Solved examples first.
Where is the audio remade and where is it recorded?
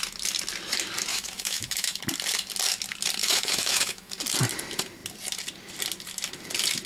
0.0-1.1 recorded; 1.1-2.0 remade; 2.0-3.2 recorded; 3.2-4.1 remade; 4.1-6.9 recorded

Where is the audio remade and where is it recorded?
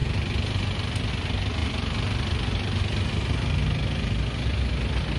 0.0-5.2 recorded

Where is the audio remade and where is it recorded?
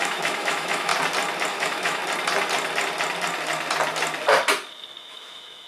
0.0-0.9 remade; 0.9-1.5 recorded; 1.5-2.0 remade; 2.0-5.0 recorded; 5.0-5.7 remade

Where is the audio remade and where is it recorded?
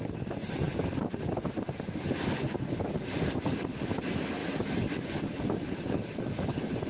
0.0-6.9 recorded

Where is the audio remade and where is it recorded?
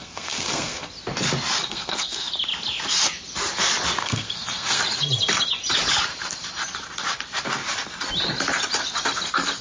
0.0-0.9 remade; 0.9-1.6 recorded; 1.6-2.3 remade; 2.3-4.0 recorded; 4.0-4.8 remade; 4.8-9.6 recorded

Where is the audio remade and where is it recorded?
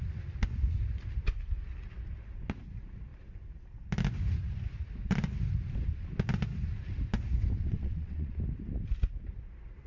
0.0-7.7 recorded; 7.7-8.3 remade; 8.3-9.9 recorded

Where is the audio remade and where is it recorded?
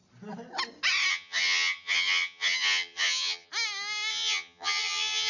0.0-1.1 recorded; 1.1-3.5 remade; 3.5-4.1 recorded; 4.1-5.3 remade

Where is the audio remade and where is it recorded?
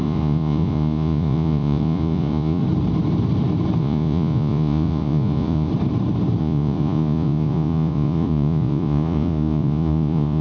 0.0-2.6 remade; 2.6-3.8 recorded; 3.8-5.7 remade; 5.7-6.4 recorded; 6.4-10.4 remade